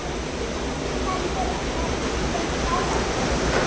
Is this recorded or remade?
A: recorded